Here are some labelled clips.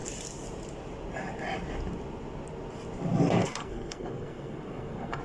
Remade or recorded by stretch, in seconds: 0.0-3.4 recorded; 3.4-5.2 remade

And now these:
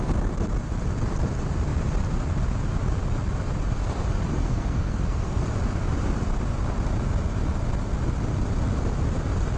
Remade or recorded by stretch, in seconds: 0.0-4.4 recorded; 4.4-5.5 remade; 5.5-9.6 recorded

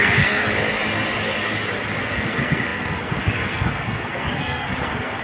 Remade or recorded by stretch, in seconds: 0.0-0.4 remade; 0.4-2.0 recorded; 2.0-5.2 remade

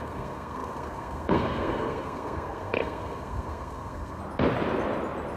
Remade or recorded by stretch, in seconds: 0.0-4.2 remade; 4.2-5.4 recorded